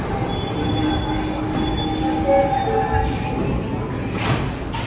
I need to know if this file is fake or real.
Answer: real